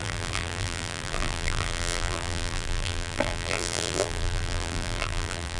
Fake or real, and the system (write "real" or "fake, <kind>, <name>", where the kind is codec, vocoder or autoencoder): fake, vocoder, BigVGAN v2